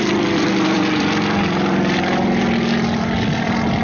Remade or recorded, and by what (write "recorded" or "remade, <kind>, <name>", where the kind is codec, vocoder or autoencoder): remade, vocoder, BigVGAN v2